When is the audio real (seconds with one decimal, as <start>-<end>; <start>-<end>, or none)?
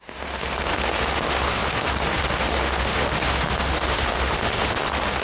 none